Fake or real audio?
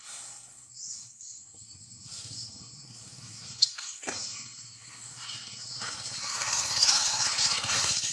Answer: fake